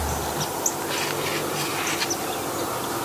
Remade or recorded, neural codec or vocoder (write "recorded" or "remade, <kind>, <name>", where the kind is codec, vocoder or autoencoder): recorded